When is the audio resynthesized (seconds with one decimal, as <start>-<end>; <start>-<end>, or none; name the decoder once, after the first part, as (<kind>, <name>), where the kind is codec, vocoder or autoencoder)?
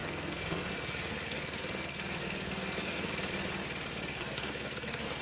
0.0-3.1 (codec, SNAC); 4.1-5.2